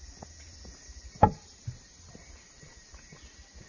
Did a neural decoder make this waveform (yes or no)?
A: no